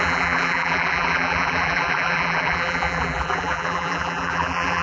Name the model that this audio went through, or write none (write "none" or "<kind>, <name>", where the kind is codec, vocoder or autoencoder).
vocoder, BigVGAN v2